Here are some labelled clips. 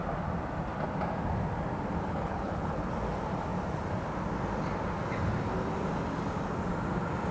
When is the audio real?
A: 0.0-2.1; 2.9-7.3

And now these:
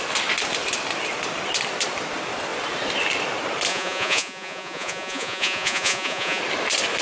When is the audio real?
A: 0.0-3.7; 6.4-7.0

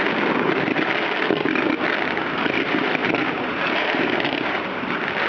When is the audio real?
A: 0.0-3.0; 4.6-5.3

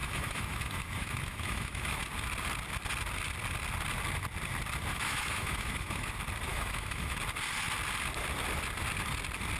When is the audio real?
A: 2.0-4.9; 6.1-6.5; 7.2-9.6

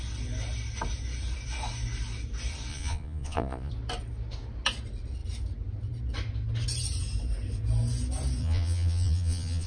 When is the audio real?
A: 0.0-2.7; 3.7-8.4

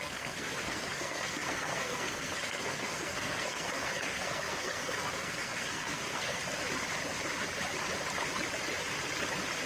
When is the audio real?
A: 6.4-9.7

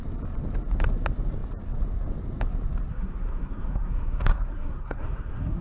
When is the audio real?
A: 0.0-2.9